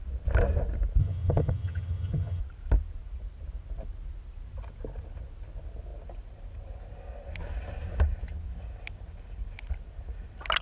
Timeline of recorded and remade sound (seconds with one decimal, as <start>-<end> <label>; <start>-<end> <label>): 0.0-1.0 recorded; 1.0-2.4 remade; 2.4-10.6 recorded